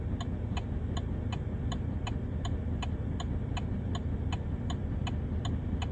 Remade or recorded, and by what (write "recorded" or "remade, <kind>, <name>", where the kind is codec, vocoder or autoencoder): recorded